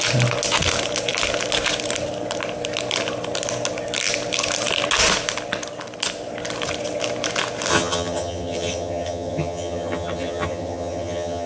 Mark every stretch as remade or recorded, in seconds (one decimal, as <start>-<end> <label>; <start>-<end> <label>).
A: 0.0-7.7 recorded; 7.7-11.5 remade